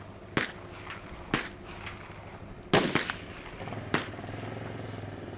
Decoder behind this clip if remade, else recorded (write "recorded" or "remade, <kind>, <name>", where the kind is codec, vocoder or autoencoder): recorded